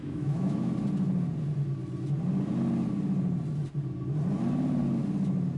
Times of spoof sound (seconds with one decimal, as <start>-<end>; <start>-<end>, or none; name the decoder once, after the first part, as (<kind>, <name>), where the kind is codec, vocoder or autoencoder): 0.0-0.7 (autoencoder, DAC-VAE)